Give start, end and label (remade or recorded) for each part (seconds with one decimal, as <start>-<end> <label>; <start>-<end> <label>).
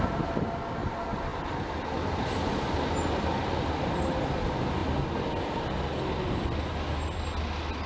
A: 0.0-7.9 recorded